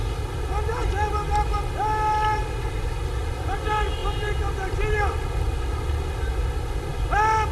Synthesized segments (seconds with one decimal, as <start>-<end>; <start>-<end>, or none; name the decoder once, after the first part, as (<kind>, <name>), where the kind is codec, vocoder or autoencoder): none